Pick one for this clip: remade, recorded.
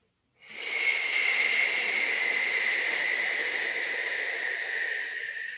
recorded